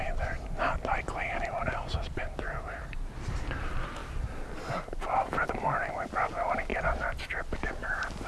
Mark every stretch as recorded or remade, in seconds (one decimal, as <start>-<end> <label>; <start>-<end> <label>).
0.0-4.0 remade; 4.0-4.7 recorded; 4.7-6.7 remade; 6.7-7.7 recorded; 7.7-8.3 remade